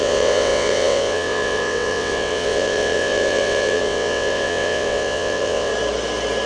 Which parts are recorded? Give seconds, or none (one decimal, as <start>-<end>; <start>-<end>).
5.7-6.5